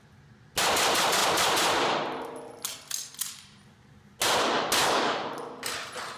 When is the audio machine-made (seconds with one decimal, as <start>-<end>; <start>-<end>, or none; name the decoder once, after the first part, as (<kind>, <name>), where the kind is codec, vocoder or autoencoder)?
4.8-5.3 (codec, DAC)